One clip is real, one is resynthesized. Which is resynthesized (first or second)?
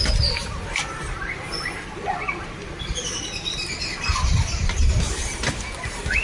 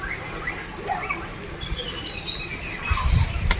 first